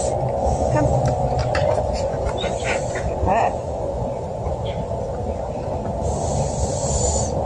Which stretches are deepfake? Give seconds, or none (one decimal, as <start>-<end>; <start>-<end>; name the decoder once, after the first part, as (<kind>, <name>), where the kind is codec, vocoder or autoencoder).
1.4-4.8 (vocoder, Vocos)